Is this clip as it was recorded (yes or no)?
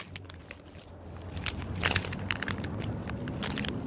yes